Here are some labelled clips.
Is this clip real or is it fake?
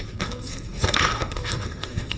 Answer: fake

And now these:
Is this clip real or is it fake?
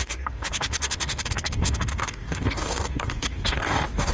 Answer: fake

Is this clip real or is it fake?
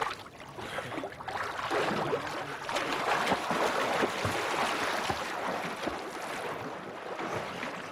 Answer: real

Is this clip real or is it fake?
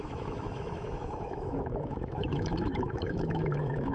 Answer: fake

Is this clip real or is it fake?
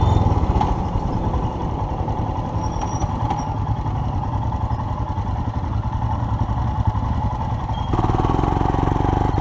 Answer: real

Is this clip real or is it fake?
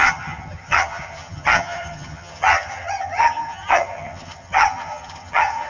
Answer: fake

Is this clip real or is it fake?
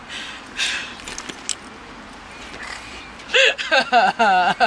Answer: real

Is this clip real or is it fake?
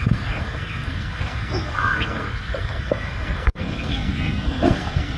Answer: fake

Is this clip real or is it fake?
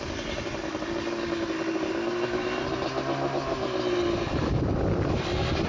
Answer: real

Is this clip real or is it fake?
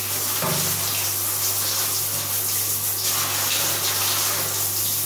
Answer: real